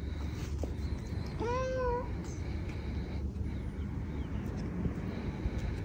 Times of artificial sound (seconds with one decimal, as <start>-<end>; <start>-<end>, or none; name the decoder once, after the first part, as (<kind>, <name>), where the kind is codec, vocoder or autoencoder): none